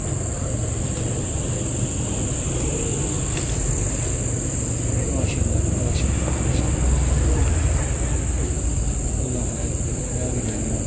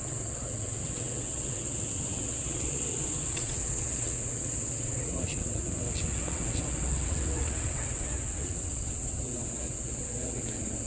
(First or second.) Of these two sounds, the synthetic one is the second